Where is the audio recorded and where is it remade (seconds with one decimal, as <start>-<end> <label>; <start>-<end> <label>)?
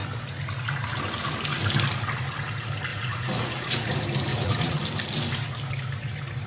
0.0-2.9 recorded; 2.9-3.9 remade; 3.9-4.3 recorded; 4.3-4.8 remade; 4.8-6.5 recorded